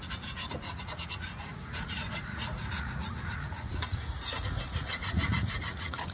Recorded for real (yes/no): no